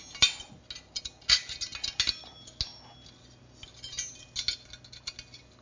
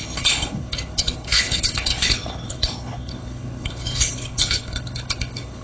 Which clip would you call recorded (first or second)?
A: first